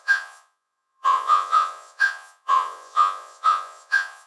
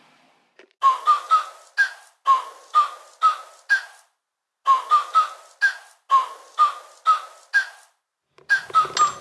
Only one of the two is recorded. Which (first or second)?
second